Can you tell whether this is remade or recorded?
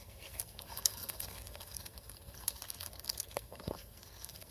remade